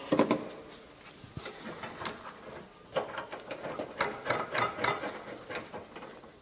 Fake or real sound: real